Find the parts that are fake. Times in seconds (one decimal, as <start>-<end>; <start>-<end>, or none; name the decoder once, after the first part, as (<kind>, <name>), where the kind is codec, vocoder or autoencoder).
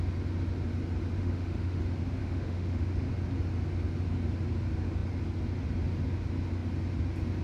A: 1.2-1.8 (autoencoder, DAC-VAE); 2.2-3.1